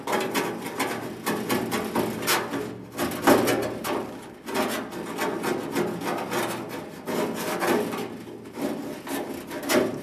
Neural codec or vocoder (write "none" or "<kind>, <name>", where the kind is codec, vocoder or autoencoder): none